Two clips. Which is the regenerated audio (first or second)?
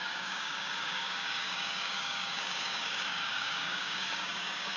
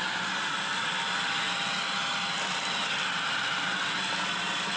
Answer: first